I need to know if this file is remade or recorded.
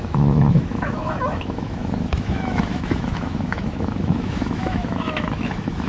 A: remade